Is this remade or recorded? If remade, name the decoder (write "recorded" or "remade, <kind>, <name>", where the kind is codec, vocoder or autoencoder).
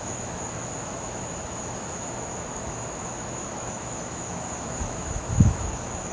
remade, autoencoder, DAC-VAE